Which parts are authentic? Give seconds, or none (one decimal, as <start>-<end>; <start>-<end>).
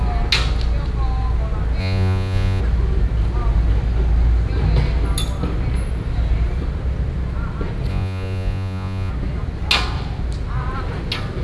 0.0-1.8; 2.6-7.9; 9.1-11.4